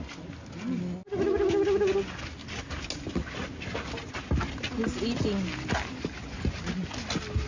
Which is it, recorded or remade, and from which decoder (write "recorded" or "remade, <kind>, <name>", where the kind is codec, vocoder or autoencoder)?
recorded